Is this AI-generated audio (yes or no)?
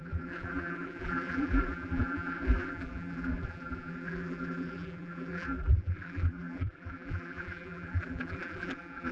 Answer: yes